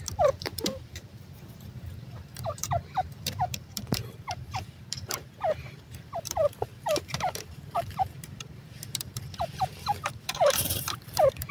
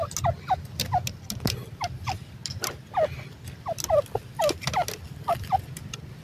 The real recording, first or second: second